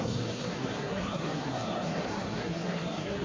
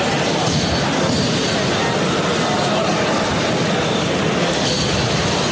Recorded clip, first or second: second